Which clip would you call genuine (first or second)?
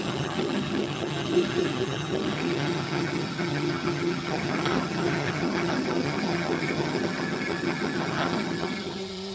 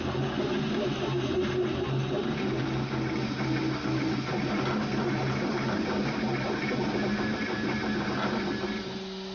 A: second